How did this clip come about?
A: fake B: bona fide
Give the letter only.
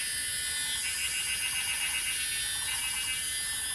B